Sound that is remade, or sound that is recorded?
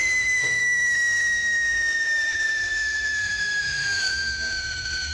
remade